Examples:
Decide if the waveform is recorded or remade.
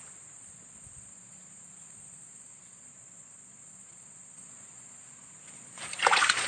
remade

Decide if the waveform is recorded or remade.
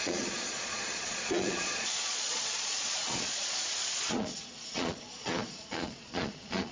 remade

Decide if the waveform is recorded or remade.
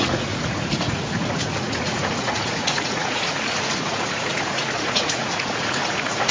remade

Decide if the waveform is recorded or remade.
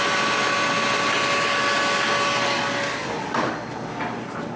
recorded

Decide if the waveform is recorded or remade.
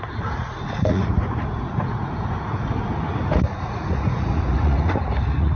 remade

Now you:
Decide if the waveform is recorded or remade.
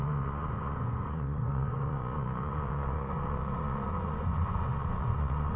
remade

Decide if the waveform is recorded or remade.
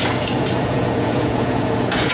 remade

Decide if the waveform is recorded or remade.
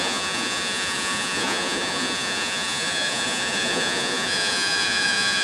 remade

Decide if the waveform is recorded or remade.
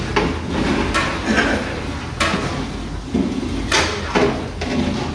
recorded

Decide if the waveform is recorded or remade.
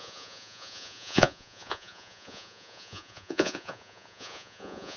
remade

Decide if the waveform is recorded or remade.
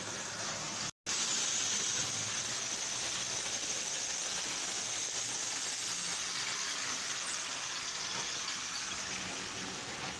recorded